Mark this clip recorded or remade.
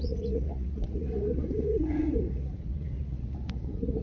remade